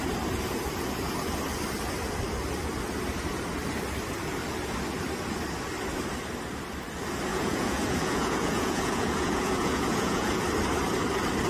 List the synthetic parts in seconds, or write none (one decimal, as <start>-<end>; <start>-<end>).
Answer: 7.3-10.4